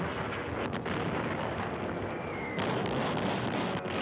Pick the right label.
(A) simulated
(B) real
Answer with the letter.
B